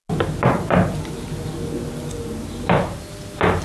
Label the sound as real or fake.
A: real